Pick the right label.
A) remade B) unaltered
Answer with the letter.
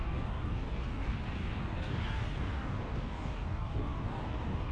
A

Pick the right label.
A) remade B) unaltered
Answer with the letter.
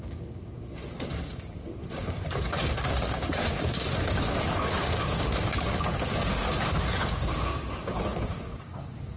A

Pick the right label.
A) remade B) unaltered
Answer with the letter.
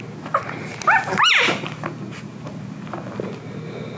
B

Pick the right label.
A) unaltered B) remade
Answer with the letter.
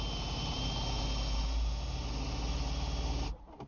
A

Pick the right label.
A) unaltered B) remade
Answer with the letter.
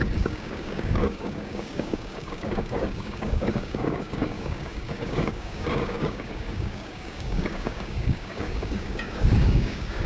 B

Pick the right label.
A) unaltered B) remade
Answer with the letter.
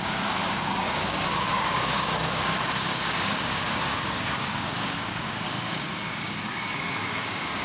B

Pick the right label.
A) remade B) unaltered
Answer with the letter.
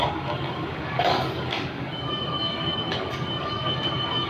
A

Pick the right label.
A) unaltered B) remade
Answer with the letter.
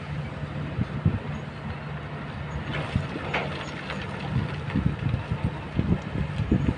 A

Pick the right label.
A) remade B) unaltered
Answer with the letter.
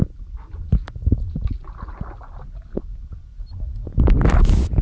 B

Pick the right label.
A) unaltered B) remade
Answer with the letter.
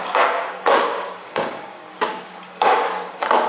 B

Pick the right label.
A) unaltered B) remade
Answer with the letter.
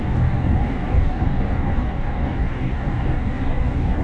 B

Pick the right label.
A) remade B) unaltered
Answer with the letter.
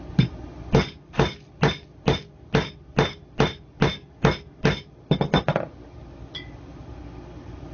B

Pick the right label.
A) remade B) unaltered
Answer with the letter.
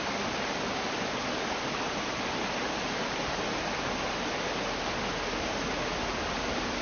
B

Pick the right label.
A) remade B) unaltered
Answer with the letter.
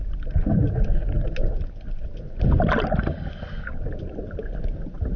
B